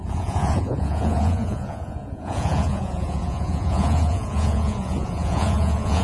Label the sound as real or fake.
fake